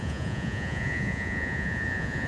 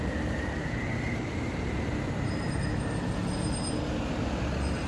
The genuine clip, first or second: second